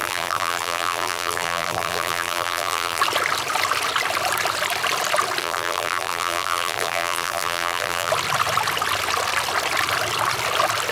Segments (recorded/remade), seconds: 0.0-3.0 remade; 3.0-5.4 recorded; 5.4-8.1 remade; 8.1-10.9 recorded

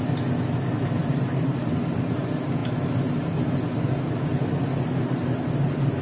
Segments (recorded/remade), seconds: 0.0-1.0 recorded; 1.0-1.7 remade; 1.7-6.0 recorded

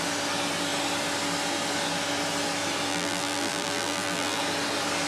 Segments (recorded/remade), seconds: 0.0-2.9 recorded; 2.9-4.4 remade; 4.4-5.1 recorded

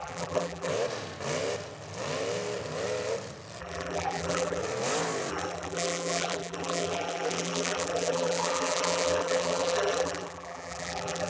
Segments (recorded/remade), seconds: 0.0-0.7 remade; 0.7-3.6 recorded; 3.6-4.6 remade; 4.6-5.3 recorded; 5.3-11.3 remade

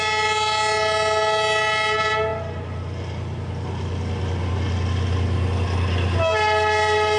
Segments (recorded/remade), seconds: 0.0-7.2 recorded

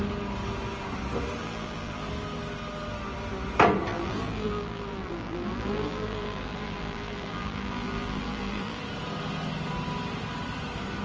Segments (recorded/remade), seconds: 0.0-1.4 recorded; 1.4-2.1 remade; 2.1-3.9 recorded; 3.9-8.8 remade; 8.8-11.0 recorded

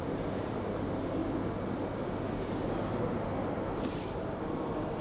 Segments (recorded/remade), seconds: 0.0-1.2 remade; 1.2-4.2 recorded; 4.2-5.0 remade